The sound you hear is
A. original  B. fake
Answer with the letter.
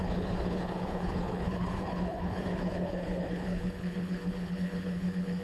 B